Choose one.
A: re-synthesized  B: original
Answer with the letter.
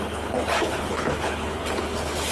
A